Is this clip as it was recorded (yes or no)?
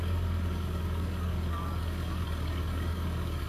no